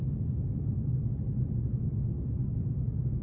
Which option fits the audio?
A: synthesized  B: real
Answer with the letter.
B